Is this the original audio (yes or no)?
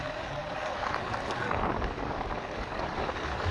no